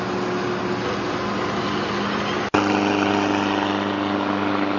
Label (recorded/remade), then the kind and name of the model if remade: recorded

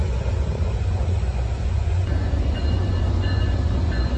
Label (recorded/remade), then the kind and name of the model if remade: remade, vocoder, Vocos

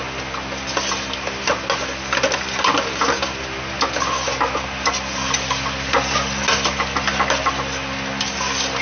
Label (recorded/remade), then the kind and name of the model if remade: recorded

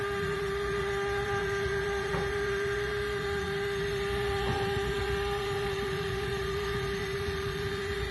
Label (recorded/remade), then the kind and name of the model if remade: remade, vocoder, Vocos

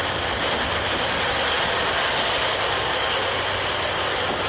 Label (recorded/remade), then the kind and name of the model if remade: recorded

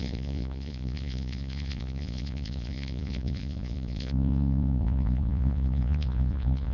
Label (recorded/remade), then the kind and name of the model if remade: remade, vocoder, Vocos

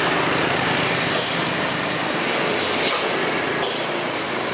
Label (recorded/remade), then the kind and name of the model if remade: recorded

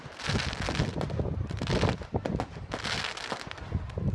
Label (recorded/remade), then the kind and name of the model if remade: recorded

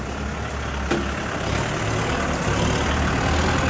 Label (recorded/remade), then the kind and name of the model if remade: recorded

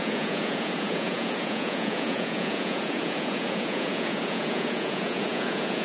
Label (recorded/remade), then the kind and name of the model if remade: remade, vocoder, Vocos